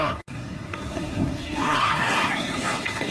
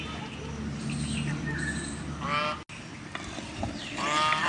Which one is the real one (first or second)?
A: second